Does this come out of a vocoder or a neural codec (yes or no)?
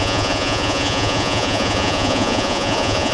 yes